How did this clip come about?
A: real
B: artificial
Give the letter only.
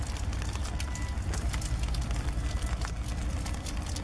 A